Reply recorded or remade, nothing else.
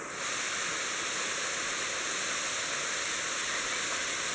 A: recorded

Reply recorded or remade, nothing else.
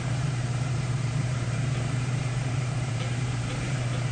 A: remade